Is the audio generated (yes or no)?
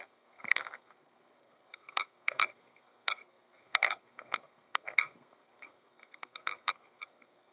yes